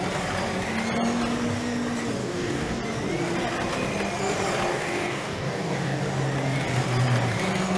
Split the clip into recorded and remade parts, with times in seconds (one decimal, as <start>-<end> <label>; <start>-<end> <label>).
0.0-2.2 recorded; 2.2-2.8 remade; 2.8-4.7 recorded; 4.7-6.0 remade; 6.0-7.8 recorded